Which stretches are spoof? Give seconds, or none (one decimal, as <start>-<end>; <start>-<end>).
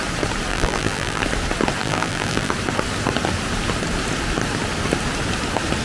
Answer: 0.5-1.2; 1.8-2.5